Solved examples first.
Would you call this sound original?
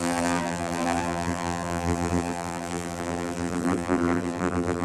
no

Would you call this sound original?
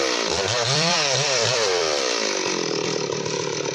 no